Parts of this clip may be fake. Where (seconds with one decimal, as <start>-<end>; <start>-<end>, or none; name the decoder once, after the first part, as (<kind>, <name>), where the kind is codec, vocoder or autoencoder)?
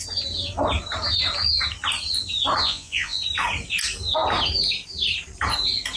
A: 2.6-3.2 (vocoder, Vocos)